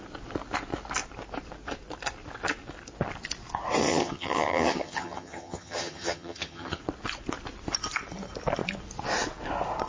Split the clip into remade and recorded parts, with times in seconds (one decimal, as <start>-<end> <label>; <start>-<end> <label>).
0.0-3.8 recorded; 3.8-6.8 remade; 6.8-9.9 recorded